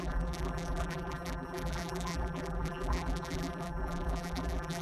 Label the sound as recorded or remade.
remade